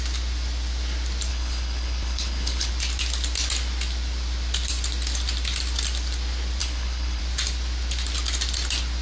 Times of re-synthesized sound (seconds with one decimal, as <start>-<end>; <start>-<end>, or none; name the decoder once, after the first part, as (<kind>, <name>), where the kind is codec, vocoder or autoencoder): 1.3-2.7 (codec, HILCodec); 6.6-7.2

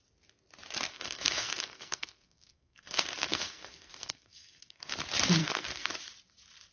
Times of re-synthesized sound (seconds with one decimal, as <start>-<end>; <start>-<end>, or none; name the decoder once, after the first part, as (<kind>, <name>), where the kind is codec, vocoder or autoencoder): 0.9-4.9 (codec, SNAC); 5.4-5.9

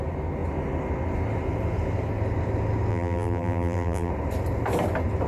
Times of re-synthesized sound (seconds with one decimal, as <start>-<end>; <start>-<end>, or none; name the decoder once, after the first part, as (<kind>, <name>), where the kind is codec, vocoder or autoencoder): 2.9-4.1 (vocoder, BigVGAN v2)

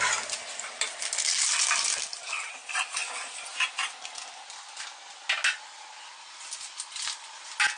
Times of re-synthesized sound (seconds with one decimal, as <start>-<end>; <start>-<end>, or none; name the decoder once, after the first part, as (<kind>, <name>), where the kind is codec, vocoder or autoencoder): none